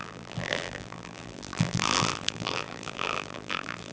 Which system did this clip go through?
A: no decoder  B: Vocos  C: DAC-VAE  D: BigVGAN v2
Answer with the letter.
D